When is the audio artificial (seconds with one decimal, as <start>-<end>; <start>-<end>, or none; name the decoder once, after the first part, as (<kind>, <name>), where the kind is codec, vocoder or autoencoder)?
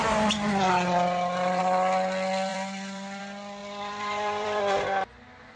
2.5-3.2 (vocoder, BigVGAN v2); 3.6-4.6